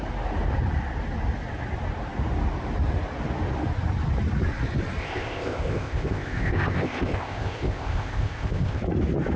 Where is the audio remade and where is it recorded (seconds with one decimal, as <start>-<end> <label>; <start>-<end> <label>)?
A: 0.0-5.0 recorded; 5.0-8.8 remade; 8.8-9.4 recorded